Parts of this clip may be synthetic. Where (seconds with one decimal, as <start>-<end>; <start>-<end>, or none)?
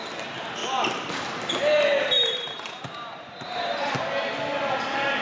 1.9-3.6